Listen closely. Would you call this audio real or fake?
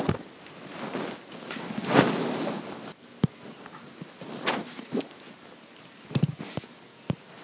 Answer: real